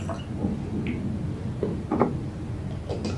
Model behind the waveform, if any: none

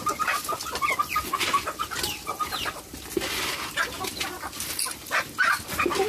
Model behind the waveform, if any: none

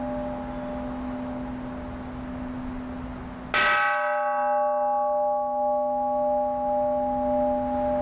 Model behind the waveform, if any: none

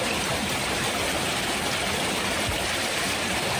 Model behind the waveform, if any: none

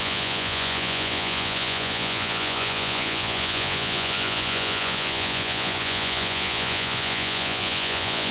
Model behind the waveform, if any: vocoder, Vocos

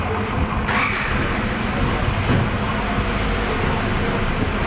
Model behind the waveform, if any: none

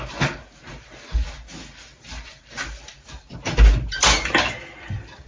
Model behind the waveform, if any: none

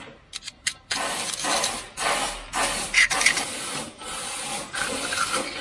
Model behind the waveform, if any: none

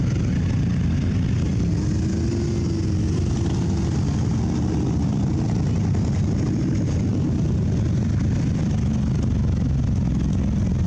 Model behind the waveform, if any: none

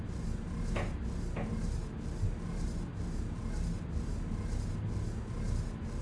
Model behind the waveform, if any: none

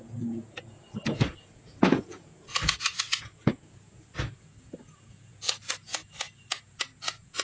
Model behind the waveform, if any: vocoder, Vocos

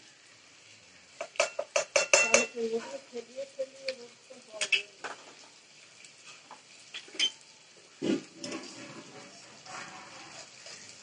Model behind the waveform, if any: none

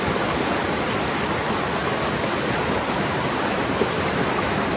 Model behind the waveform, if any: none